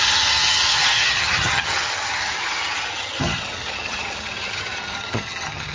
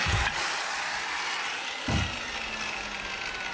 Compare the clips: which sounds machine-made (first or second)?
first